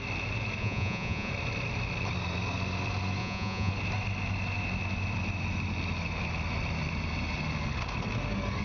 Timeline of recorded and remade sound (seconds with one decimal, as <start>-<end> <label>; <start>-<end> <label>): 0.0-0.6 recorded; 0.6-1.3 remade; 1.3-3.2 recorded; 3.2-3.7 remade; 3.7-8.6 recorded